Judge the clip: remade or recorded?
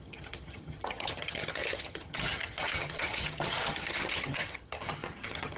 remade